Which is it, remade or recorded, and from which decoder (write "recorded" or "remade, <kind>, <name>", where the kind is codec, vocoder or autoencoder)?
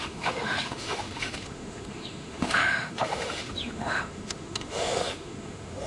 remade, autoencoder, DAC-VAE